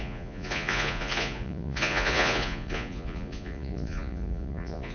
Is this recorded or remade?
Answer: remade